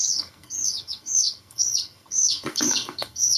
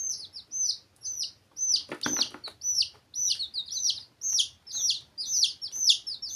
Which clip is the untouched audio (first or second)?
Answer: second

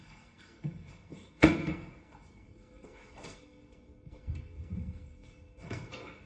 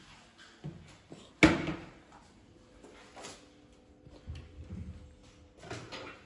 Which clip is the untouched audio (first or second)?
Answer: second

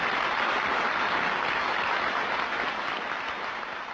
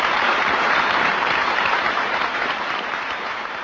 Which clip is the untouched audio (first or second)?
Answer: first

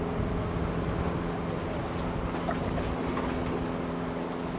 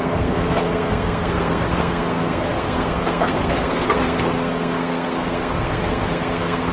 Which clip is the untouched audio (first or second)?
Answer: first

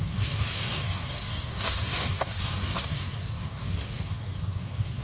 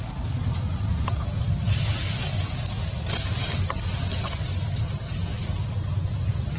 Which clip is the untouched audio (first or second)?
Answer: second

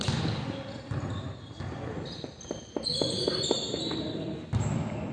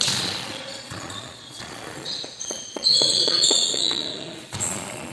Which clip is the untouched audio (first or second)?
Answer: first